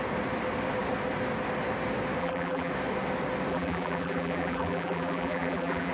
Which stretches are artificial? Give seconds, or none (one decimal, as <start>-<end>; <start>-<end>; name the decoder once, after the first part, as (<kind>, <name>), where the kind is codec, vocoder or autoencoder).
2.2-2.7 (vocoder, BigVGAN v2); 3.5-5.9

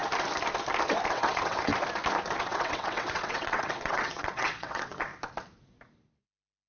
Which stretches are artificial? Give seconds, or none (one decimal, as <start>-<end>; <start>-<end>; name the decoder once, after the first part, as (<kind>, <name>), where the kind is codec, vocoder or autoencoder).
1.1-1.7 (vocoder, WaveNeXt); 2.4-5.1

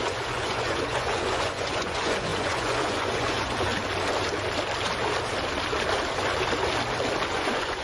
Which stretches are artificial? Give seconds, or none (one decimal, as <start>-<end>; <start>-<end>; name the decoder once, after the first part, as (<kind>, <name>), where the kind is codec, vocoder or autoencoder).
0.0-3.7 (vocoder, Vocos); 7.3-7.8

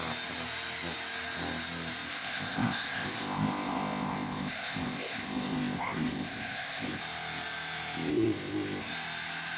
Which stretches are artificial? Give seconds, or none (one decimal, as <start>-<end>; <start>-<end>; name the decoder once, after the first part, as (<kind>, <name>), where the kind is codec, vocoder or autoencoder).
2.1-7.0 (codec, ZipCodec); 8.1-8.9

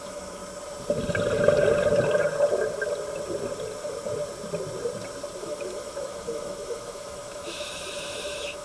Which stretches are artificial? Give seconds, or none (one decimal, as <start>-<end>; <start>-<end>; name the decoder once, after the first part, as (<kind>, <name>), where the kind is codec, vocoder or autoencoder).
0.0-0.4 (autoencoder, DAC-VAE); 5.4-8.6